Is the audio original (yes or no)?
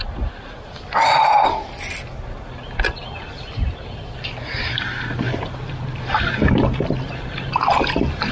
yes